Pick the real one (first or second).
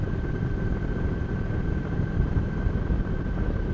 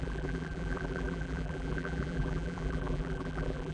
first